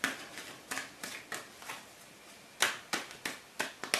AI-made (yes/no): no